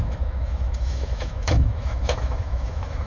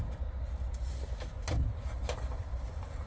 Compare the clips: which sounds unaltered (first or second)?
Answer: second